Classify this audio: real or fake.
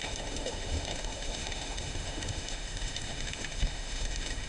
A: fake